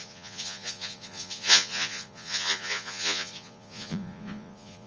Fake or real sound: fake